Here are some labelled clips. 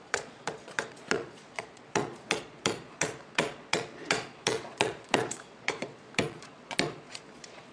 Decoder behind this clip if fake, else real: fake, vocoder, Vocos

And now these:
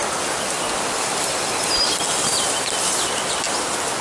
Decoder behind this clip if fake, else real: real